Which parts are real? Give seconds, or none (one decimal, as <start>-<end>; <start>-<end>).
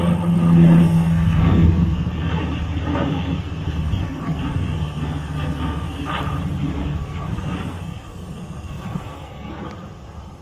0.0-0.8; 2.4-2.9; 6.1-6.8; 9.6-10.4